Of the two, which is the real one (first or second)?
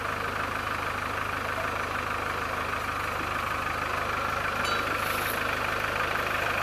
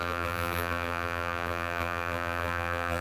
first